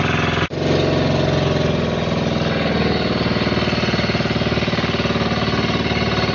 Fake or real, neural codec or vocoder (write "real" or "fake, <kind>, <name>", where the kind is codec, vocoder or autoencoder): real